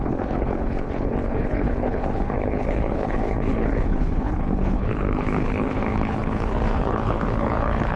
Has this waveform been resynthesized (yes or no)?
yes